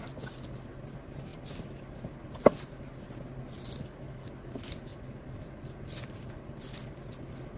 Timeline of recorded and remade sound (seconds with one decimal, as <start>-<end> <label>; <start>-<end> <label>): 0.0-7.6 recorded